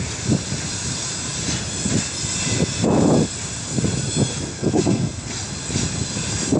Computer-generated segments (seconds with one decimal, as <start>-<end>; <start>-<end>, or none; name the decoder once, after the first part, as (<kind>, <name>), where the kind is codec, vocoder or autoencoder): 4.5-5.3 (codec, SNAC)